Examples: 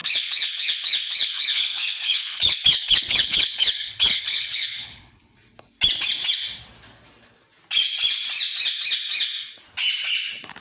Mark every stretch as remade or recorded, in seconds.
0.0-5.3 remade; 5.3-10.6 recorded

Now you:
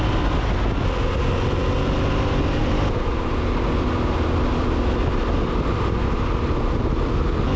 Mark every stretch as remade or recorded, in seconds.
0.0-7.6 recorded

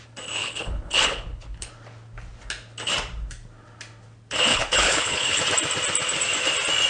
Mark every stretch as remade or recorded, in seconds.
0.0-0.4 recorded; 0.4-1.7 remade; 1.7-4.5 recorded; 4.5-5.4 remade; 5.4-6.9 recorded

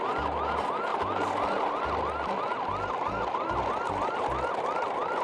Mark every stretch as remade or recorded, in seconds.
0.0-5.2 recorded